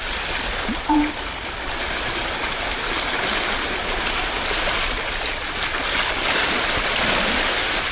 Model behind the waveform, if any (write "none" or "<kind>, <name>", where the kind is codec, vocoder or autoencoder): none